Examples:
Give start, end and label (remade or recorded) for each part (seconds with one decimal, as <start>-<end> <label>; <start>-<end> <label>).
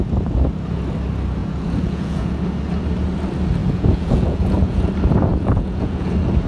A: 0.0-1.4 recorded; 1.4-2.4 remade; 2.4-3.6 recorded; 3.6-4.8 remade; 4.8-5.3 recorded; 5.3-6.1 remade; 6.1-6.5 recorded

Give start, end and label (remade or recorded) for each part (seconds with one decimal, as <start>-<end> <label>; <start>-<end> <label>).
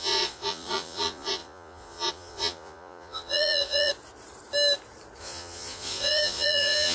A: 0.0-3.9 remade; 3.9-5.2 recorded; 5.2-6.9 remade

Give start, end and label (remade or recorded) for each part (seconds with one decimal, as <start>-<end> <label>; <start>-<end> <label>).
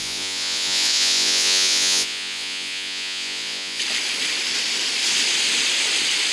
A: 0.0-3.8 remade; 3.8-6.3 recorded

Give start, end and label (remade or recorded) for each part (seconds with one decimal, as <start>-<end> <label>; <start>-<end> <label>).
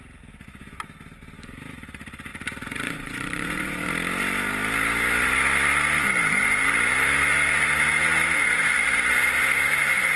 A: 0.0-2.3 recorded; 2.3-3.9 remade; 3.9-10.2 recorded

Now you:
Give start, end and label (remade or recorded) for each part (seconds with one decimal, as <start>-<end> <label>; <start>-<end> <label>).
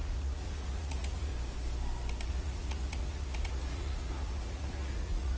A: 0.0-1.3 remade; 1.3-2.3 recorded; 2.3-5.4 remade